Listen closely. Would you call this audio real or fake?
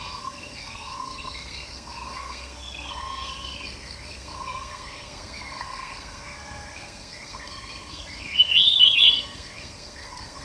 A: fake